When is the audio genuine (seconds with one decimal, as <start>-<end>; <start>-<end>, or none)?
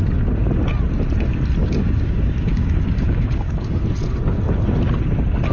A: 0.0-1.6; 3.8-5.5